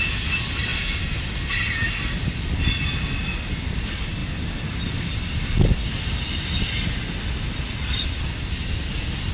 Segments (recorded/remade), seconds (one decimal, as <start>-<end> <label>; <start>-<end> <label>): 0.0-9.3 recorded